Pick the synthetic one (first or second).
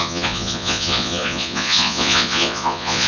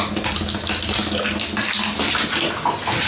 first